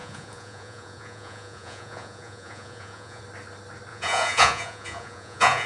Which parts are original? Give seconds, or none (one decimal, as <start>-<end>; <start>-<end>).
3.2-3.9